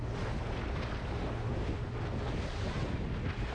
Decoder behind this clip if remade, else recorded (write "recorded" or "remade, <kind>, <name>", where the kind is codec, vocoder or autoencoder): recorded